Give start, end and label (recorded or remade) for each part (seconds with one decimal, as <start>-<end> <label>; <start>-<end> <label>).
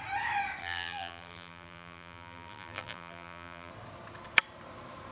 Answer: 0.0-0.6 recorded; 0.6-3.7 remade; 3.7-5.1 recorded